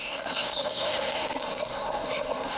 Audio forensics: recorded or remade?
remade